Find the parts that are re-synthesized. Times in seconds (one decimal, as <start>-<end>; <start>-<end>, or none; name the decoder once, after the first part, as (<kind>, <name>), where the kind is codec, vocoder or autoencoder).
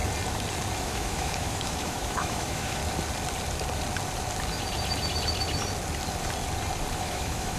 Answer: 0.8-2.8 (autoencoder, DAC-VAE); 6.9-7.6